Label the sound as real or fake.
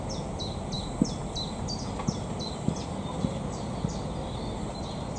real